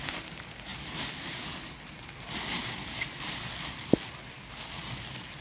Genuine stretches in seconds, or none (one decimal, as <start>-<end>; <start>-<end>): 0.0-5.4